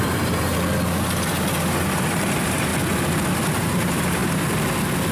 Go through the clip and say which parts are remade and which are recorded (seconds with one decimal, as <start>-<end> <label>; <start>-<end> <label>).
0.0-0.5 remade; 0.5-1.8 recorded; 1.8-2.7 remade; 2.7-3.6 recorded; 3.6-4.2 remade; 4.2-5.1 recorded